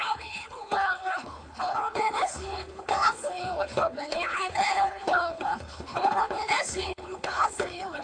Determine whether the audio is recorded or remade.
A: remade